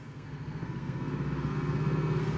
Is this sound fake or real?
fake